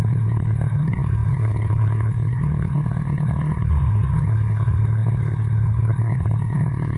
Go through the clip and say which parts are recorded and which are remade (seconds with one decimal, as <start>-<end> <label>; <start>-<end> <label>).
0.0-7.0 remade